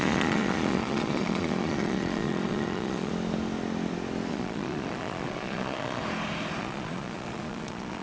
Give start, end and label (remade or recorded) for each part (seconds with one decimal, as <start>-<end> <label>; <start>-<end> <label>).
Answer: 0.0-3.1 remade; 3.1-4.3 recorded; 4.3-6.0 remade; 6.0-6.6 recorded; 6.6-8.0 remade